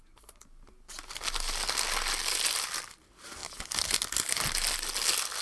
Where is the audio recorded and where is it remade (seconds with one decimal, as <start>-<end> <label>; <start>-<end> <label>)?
0.0-5.4 recorded